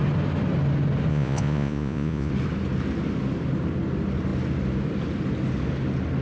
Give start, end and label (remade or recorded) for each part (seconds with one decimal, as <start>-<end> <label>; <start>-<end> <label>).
0.0-1.1 recorded; 1.1-2.3 remade; 2.3-6.2 recorded